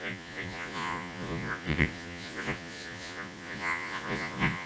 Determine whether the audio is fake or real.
fake